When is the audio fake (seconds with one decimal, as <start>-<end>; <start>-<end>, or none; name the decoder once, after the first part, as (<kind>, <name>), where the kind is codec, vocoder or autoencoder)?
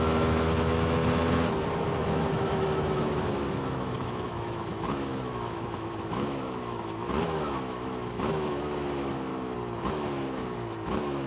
0.0-1.0 (autoencoder, DAC-VAE); 2.0-9.3; 9.9-11.3